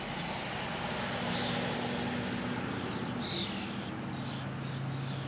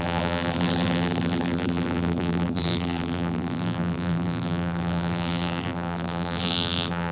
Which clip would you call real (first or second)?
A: first